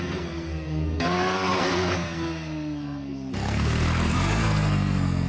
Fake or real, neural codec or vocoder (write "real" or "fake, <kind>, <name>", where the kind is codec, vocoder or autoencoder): fake, codec, SNAC